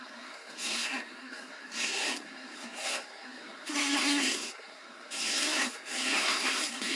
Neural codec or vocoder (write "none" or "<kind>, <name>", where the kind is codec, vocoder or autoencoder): codec, SNAC